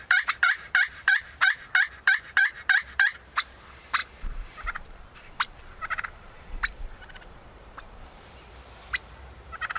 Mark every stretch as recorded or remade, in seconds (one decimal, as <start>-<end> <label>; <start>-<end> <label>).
0.0-1.4 remade; 1.4-2.0 recorded; 2.0-9.8 remade